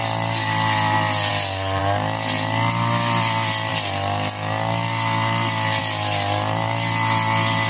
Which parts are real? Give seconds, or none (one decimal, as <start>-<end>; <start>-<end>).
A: 0.0-7.7